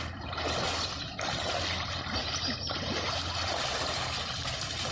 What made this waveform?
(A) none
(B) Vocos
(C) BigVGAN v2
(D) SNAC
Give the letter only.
A